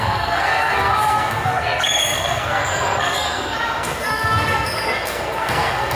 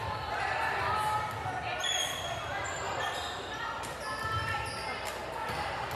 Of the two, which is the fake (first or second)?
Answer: first